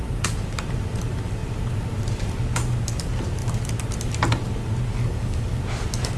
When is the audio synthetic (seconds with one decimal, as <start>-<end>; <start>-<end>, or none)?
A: 4.9-5.6